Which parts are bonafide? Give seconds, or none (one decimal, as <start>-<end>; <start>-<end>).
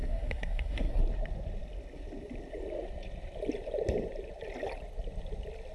1.0-5.7